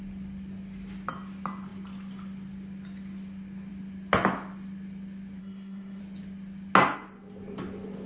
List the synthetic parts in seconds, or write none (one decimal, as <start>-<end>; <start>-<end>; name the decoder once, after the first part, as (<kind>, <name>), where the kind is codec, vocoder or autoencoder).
5.4-6.0 (codec, SNAC)